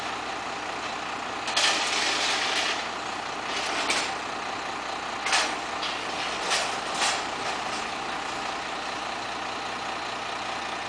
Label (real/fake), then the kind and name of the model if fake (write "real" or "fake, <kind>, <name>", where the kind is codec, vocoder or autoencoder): real